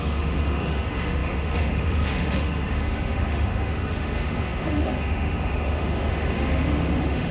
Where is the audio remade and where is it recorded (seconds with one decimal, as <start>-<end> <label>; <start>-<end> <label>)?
0.0-7.3 remade